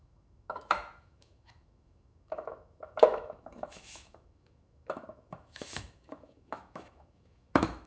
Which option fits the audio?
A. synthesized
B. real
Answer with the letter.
A